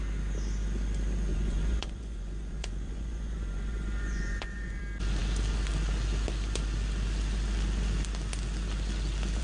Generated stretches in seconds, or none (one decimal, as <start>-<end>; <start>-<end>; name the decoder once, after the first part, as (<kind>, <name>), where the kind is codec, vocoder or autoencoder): 1.3-4.8 (vocoder, Vocos)